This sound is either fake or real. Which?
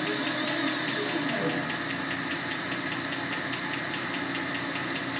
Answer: real